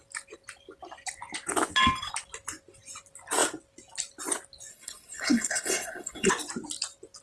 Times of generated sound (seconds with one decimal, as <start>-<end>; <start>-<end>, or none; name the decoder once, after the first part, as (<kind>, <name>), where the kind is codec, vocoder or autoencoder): 4.7-6.3 (codec, HILCodec)